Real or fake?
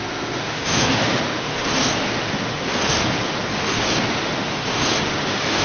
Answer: fake